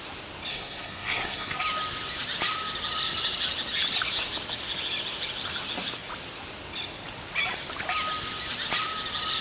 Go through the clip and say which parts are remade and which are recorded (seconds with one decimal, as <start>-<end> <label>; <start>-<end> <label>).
0.0-0.5 recorded; 0.5-1.6 remade; 1.6-9.4 recorded